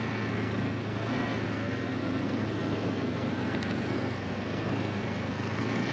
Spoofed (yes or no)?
yes